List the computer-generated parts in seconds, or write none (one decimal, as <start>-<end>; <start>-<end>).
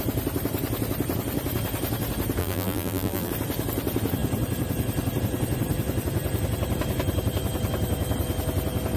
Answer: 2.4-3.3